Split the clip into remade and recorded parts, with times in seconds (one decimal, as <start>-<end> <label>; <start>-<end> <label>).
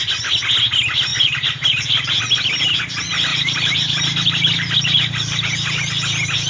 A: 0.0-1.1 recorded; 1.1-2.2 remade; 2.2-3.3 recorded; 3.3-5.9 remade; 5.9-6.5 recorded